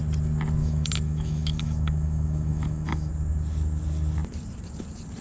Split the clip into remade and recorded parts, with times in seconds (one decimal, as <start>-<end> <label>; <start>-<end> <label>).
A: 0.0-0.6 recorded; 0.6-3.1 remade; 3.1-5.2 recorded